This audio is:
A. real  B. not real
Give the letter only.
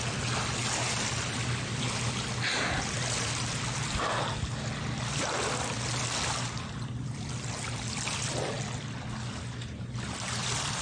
A